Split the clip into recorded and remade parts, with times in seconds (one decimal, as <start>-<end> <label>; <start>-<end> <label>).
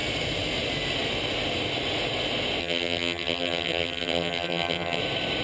0.0-2.6 recorded; 2.6-5.0 remade; 5.0-5.4 recorded